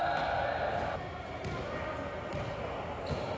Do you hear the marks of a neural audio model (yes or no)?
no